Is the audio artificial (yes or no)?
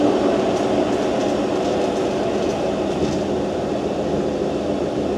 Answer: no